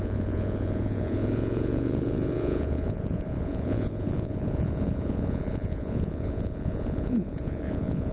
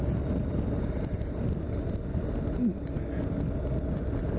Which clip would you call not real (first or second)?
first